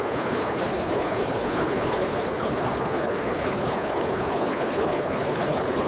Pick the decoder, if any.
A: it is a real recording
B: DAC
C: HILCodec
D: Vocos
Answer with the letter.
C